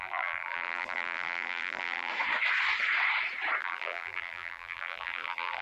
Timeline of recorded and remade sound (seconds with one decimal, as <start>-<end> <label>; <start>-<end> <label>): 0.0-2.1 remade; 2.1-3.6 recorded; 3.6-5.6 remade

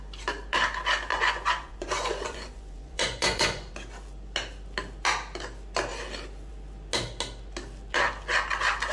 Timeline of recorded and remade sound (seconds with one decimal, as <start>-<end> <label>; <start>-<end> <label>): 0.0-1.1 recorded; 1.1-3.7 remade; 3.7-8.9 recorded

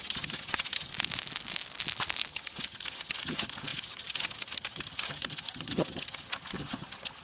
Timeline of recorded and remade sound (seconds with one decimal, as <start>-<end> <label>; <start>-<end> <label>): 0.0-0.9 remade; 0.9-2.3 recorded; 2.3-7.2 remade

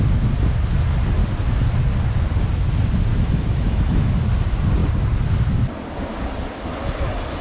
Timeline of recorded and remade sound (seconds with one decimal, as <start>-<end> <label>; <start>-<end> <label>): 0.0-3.1 recorded; 3.1-4.1 remade; 4.1-7.4 recorded

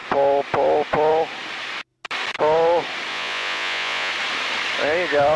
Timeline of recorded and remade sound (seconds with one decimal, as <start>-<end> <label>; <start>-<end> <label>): 0.0-3.1 recorded; 3.1-4.1 remade; 4.1-5.4 recorded

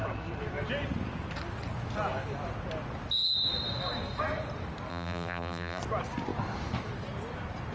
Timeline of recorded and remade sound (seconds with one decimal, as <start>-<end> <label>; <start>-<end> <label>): 0.0-4.9 recorded; 4.9-5.8 remade; 5.8-7.7 recorded